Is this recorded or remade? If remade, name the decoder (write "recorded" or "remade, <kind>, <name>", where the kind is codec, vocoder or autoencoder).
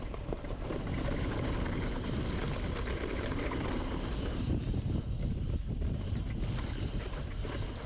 remade, vocoder, BigVGAN v2